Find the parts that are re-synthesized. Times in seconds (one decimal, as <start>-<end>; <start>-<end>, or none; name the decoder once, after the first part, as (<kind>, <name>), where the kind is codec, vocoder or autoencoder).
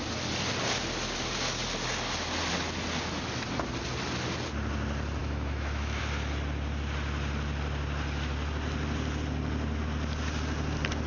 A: 5.2-6.0 (autoencoder, DAC-VAE)